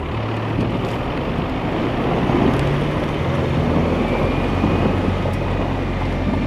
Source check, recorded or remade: recorded